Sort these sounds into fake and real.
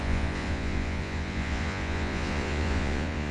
fake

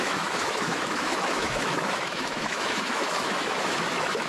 fake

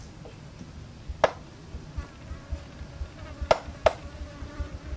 real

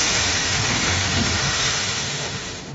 fake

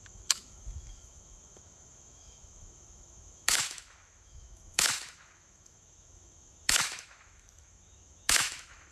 fake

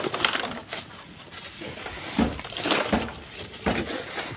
real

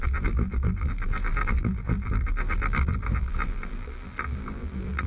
fake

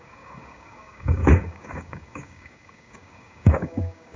fake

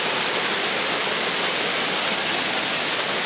real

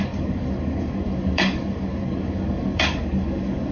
fake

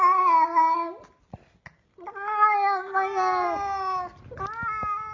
real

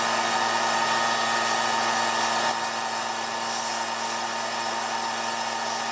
real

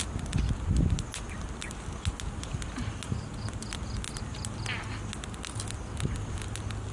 real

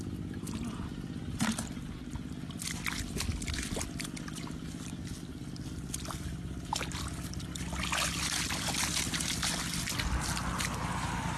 real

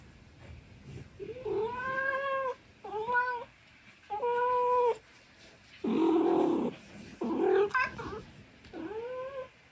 real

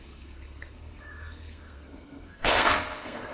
fake